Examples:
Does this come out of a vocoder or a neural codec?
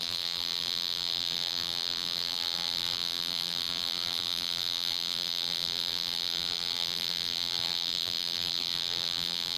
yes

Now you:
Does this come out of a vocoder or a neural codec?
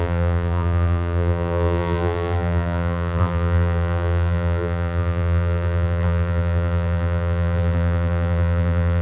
yes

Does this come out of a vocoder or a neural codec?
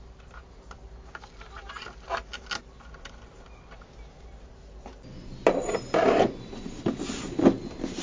no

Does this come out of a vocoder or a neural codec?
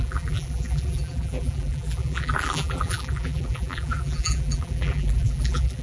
yes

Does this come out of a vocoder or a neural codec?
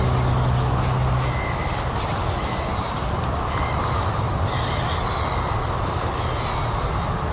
no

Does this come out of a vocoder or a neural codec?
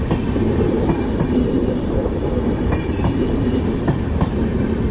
yes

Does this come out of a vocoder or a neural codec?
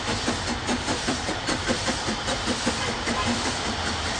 yes